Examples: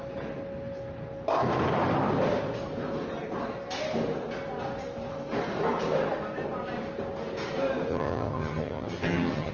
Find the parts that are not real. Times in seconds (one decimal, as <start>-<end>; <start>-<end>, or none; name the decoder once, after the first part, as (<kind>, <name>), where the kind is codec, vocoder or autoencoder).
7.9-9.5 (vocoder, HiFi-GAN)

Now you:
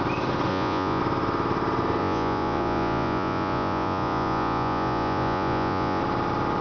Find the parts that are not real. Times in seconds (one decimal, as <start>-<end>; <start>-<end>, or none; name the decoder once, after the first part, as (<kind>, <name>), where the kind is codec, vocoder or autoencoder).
0.5-1.0 (vocoder, Vocos); 2.0-6.0

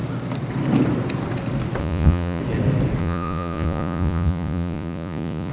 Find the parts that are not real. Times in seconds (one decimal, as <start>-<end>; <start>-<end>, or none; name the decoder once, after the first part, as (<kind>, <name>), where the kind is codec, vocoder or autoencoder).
1.8-2.4 (vocoder, Vocos); 3.0-5.5

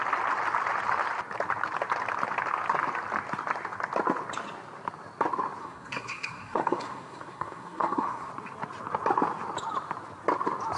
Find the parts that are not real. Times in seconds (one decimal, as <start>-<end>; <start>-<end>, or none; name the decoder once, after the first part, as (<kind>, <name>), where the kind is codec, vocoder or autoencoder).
5.6-8.3 (codec, SNAC)